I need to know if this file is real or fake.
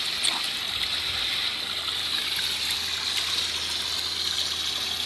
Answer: real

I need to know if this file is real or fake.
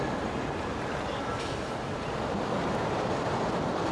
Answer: real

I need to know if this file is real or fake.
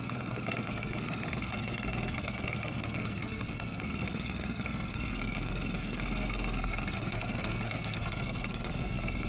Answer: fake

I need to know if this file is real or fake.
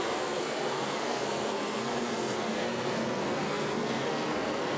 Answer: fake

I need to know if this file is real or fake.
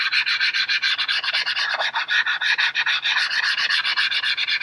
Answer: real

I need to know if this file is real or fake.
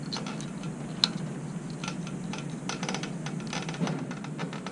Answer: real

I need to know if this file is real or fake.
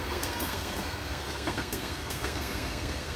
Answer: fake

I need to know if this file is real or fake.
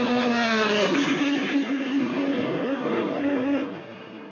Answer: fake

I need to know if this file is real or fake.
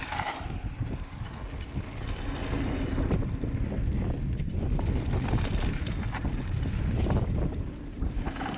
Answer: real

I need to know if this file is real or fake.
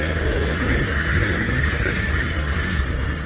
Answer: fake